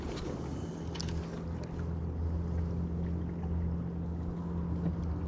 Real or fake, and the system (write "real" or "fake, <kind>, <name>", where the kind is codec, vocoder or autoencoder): real